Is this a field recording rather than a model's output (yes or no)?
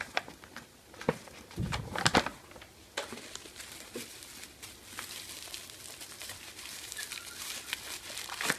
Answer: yes